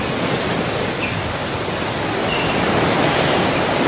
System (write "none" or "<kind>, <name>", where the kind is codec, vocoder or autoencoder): none